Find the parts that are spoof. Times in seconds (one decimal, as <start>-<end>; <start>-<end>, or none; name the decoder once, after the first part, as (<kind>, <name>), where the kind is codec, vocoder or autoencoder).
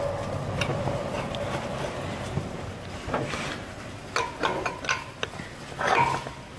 none